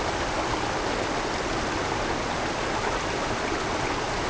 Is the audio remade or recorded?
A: recorded